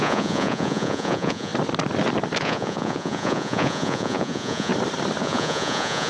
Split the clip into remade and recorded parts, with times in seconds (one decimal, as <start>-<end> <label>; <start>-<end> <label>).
0.0-1.5 remade; 1.5-2.4 recorded; 2.4-4.7 remade; 4.7-5.2 recorded; 5.2-6.1 remade